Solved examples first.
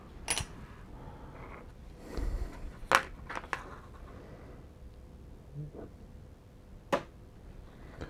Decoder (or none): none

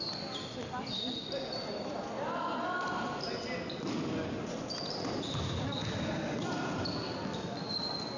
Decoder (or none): none